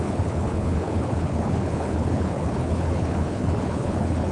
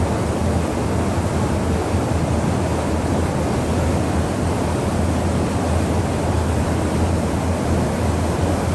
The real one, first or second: second